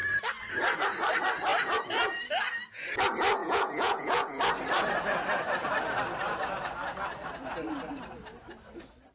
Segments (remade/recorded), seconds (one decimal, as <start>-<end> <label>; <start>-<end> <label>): 0.0-3.4 recorded; 3.4-4.4 remade; 4.4-9.1 recorded